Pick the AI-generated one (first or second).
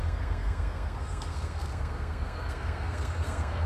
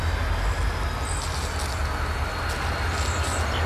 first